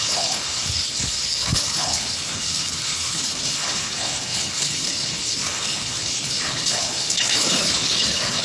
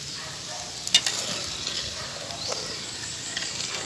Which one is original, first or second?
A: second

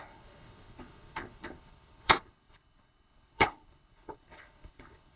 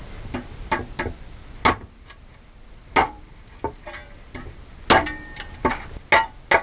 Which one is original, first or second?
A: second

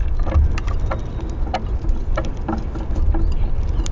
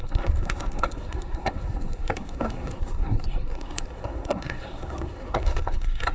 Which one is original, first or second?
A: first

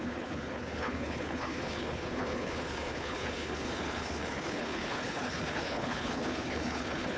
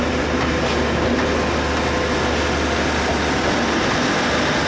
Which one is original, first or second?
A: second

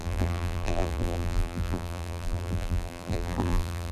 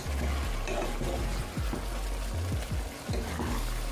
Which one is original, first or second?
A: second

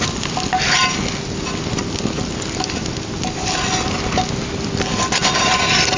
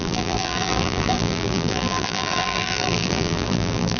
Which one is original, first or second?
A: first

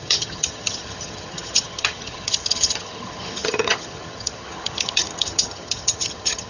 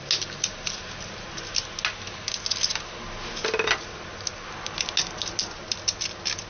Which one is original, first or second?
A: second